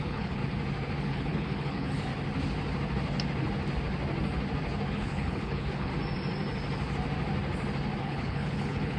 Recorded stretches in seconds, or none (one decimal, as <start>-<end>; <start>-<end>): 0.4-1.0; 2.1-4.9; 5.9-8.0